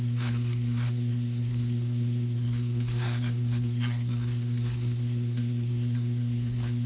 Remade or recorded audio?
remade